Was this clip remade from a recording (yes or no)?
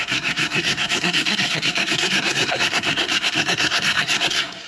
yes